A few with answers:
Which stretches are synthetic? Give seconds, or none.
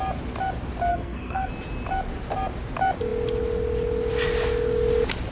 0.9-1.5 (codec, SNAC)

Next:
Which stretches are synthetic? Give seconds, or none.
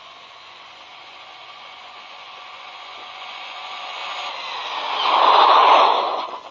0.0-4.0 (vocoder, Vocos); 5.2-6.5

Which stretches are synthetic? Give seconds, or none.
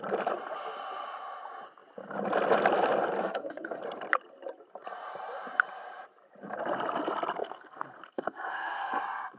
3.2-3.8 (codec, SNAC); 7.4-9.0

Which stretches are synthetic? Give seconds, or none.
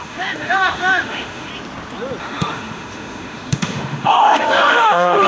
0.0-1.5 (autoencoder, DAC-VAE); 2.2-5.3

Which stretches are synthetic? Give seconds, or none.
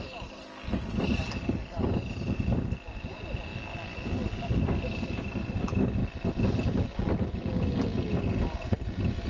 0.0-0.8 (vocoder, BigVGAN v2); 1.8-3.5; 4.5-6.0; 7.2-9.3